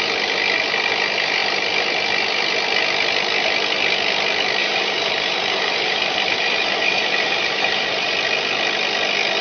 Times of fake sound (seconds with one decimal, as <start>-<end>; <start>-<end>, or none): 4.6-8.1